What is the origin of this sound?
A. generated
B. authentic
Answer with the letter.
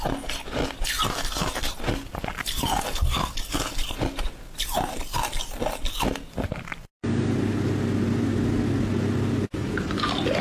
B